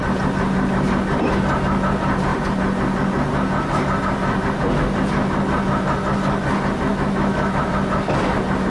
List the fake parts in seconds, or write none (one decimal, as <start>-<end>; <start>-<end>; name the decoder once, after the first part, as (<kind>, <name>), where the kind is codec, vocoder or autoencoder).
6.9-7.7 (autoencoder, DAC-VAE)